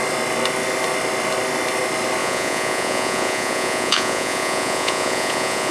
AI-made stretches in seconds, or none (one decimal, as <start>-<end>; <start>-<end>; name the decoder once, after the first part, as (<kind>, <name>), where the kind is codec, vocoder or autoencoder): 2.2-5.7 (vocoder, Vocos)

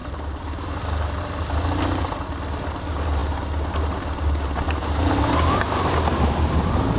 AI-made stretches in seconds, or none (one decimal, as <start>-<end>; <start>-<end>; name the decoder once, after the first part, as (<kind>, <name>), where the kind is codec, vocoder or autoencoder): 0.0-1.2 (vocoder, BigVGAN v2)

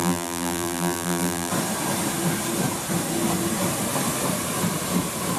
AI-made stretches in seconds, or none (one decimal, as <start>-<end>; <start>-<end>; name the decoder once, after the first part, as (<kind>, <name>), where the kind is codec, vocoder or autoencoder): 0.0-1.5 (vocoder, BigVGAN v2)

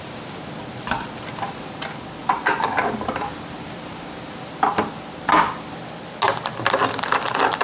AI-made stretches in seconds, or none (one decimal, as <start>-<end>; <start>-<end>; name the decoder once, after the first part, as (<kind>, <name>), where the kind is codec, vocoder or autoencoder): none